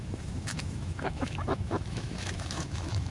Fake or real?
fake